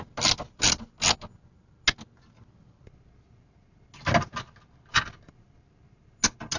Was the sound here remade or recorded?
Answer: recorded